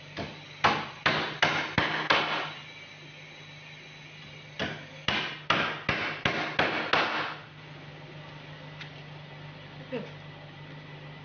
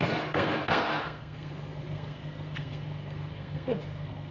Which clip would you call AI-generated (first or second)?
second